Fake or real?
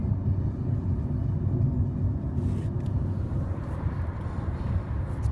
real